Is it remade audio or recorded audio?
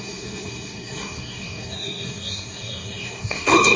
remade